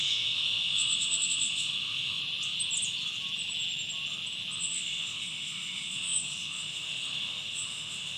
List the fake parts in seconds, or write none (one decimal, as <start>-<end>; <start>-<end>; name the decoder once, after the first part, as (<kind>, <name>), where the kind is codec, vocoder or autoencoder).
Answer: 0.0-2.2 (autoencoder, DAC-VAE); 4.6-8.2